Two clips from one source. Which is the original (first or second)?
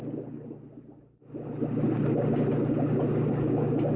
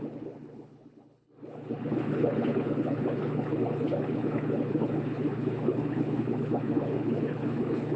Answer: first